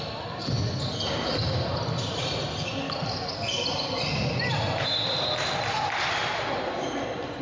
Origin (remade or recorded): recorded